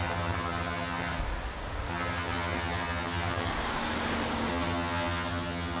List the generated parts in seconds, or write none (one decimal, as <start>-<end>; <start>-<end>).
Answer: 0.0-1.2; 1.9-3.5; 4.5-5.8